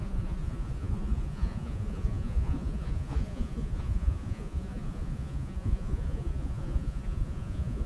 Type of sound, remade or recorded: remade